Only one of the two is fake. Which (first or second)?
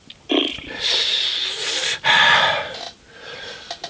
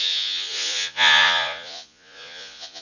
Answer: second